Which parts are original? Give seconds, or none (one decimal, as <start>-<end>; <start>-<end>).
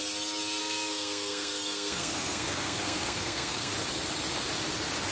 0.0-0.6; 3.7-5.1